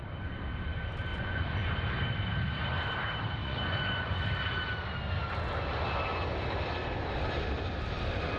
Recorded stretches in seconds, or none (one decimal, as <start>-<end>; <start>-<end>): 0.0-1.1; 1.7-3.4; 4.2-8.4